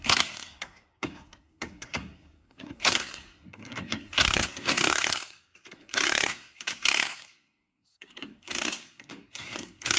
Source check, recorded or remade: remade